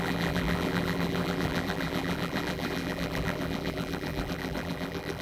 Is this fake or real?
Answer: fake